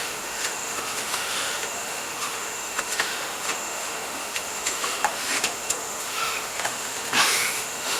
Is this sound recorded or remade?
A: remade